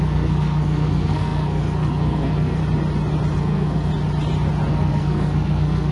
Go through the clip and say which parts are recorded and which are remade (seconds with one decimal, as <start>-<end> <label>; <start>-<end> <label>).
0.0-2.6 remade; 2.6-3.4 recorded; 3.4-3.9 remade; 3.9-4.7 recorded; 4.7-5.9 remade